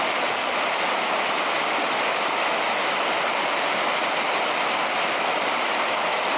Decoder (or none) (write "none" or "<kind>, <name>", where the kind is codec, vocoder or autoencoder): none